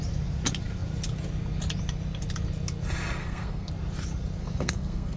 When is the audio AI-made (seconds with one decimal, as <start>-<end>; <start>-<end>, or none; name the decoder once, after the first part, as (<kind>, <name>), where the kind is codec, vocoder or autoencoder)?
3.2-3.7 (codec, SNAC); 4.4-5.2